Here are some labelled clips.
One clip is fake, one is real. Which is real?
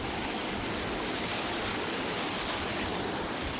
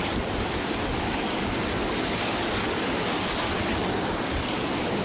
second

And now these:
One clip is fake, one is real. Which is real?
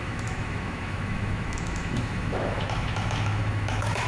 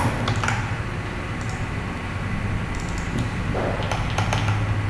second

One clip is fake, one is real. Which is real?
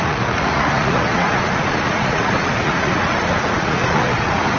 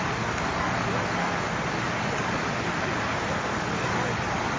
second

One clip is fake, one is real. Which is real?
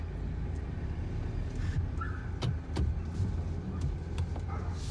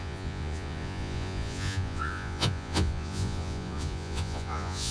first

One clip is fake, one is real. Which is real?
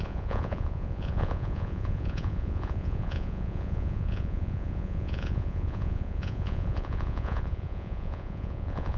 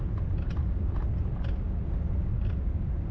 second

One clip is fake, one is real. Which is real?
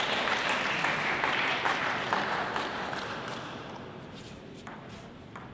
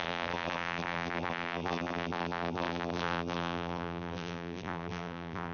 first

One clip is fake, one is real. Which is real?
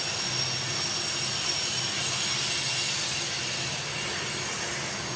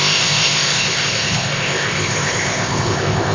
first